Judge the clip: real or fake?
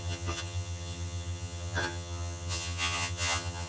fake